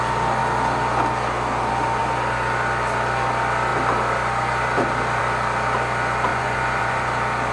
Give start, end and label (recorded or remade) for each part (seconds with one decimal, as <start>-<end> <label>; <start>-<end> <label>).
0.0-6.3 recorded; 6.3-7.1 remade; 7.1-7.5 recorded

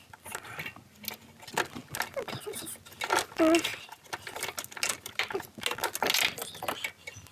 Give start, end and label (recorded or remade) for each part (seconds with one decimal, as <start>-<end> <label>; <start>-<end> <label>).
0.0-7.3 recorded

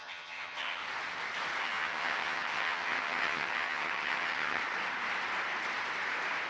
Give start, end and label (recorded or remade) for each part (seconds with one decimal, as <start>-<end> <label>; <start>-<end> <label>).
0.0-0.8 remade; 0.8-1.6 recorded; 1.6-4.6 remade; 4.6-6.5 recorded

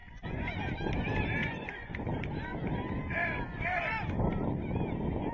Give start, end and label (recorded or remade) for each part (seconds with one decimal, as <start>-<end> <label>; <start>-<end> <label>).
0.0-0.6 remade; 0.6-1.4 recorded; 1.4-1.9 remade; 1.9-5.3 recorded

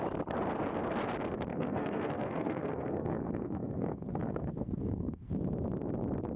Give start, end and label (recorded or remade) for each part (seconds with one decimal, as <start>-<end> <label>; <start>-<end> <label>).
0.0-1.5 recorded; 1.5-5.3 remade; 5.3-6.4 recorded